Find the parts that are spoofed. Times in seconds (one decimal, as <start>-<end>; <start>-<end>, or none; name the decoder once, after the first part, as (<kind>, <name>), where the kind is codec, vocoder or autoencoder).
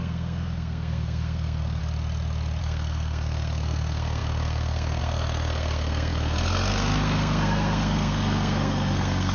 0.0-1.8 (codec, SNAC); 2.6-9.3